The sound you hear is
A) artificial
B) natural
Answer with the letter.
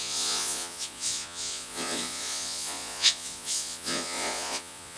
A